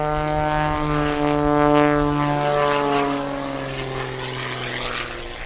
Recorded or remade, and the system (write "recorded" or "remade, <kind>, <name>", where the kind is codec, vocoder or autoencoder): recorded